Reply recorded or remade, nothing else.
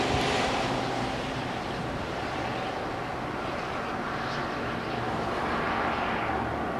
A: recorded